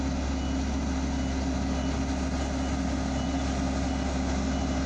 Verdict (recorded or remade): recorded